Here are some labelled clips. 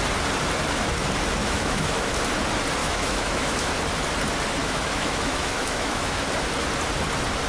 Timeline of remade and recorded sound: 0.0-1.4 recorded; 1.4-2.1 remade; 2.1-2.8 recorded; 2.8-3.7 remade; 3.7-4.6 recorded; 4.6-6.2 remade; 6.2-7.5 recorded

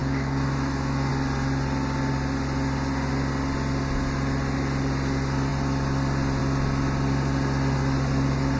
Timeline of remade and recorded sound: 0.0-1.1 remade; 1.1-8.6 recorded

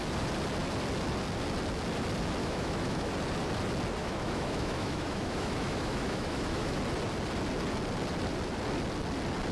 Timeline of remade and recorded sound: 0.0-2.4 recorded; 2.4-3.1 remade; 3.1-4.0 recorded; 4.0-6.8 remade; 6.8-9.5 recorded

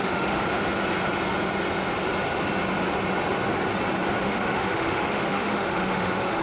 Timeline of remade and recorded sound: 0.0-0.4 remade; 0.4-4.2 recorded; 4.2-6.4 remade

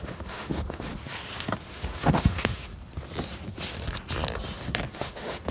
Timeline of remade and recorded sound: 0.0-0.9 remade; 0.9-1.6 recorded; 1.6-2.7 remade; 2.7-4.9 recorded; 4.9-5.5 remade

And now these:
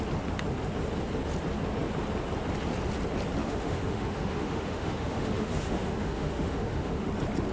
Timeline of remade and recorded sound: 0.0-3.4 recorded; 3.4-7.1 remade; 7.1-7.5 recorded

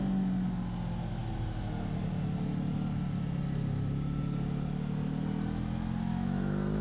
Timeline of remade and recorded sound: 0.0-6.1 recorded; 6.1-6.8 remade

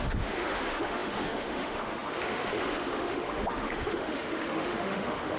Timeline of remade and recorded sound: 0.0-5.4 remade